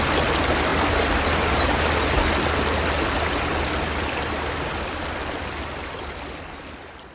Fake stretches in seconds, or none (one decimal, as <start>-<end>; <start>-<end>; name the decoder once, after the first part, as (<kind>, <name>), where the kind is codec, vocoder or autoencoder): none